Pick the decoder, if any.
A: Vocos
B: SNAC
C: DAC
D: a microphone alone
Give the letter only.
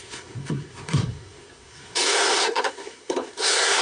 B